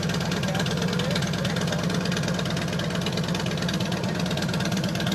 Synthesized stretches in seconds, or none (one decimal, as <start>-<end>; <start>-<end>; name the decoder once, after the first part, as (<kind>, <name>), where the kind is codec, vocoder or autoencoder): none